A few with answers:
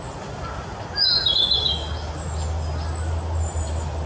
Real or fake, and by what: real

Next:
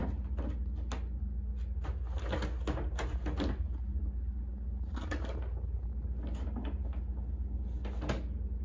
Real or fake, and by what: real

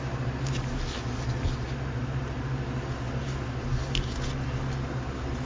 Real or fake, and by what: real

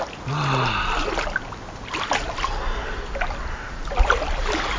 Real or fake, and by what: real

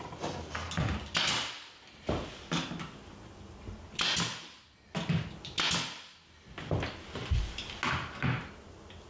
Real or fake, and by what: real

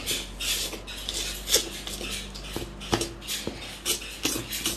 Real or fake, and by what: real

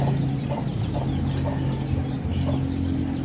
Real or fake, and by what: real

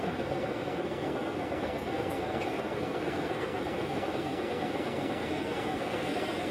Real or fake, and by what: fake, codec, SNAC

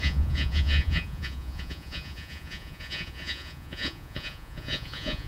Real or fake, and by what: fake, vocoder, Vocos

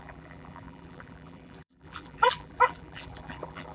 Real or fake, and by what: fake, vocoder, BigVGAN v2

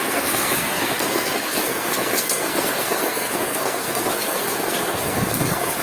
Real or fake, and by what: fake, codec, SNAC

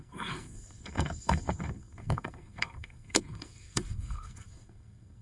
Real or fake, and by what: fake, codec, SNAC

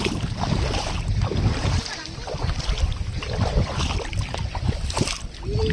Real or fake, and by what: real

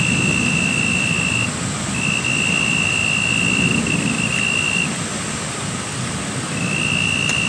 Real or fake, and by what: real